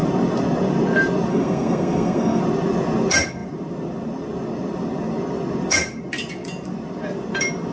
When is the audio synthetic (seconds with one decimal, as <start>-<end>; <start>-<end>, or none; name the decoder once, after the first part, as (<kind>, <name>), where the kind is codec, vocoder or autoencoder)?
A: 1.3-2.4 (codec, SNAC)